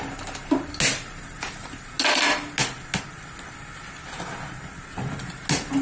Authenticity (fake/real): real